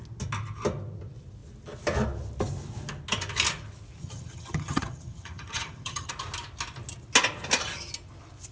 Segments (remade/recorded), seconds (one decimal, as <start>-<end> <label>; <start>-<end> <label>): 0.0-4.0 recorded; 4.0-6.1 remade; 6.1-8.5 recorded